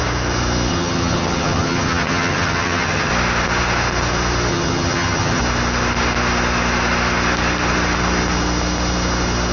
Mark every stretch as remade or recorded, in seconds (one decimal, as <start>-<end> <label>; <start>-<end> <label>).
0.0-0.7 recorded; 0.7-3.1 remade; 3.1-4.5 recorded; 4.5-5.4 remade; 5.4-9.5 recorded